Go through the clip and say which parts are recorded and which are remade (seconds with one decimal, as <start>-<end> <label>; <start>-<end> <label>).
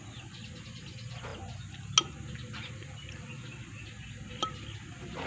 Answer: 0.0-5.3 recorded